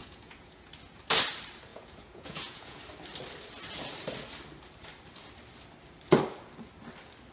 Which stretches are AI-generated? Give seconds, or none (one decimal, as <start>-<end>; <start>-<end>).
0.0-0.7; 1.7-2.8